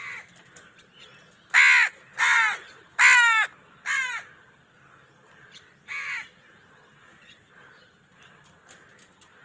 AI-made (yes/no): no